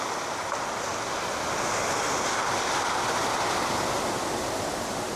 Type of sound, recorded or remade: recorded